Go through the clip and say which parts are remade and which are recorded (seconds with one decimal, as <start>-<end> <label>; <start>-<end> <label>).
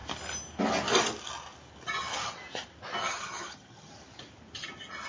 0.0-3.0 recorded; 3.0-3.9 remade; 3.9-5.1 recorded